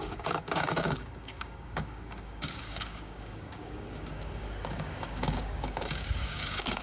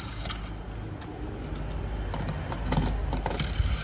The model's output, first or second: first